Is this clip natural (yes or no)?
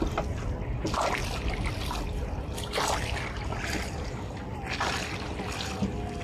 yes